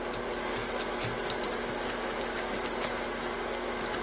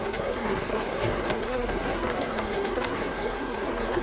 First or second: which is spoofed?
second